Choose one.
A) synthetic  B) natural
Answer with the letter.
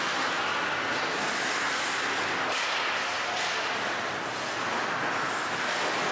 B